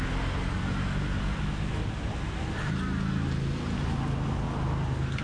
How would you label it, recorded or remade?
recorded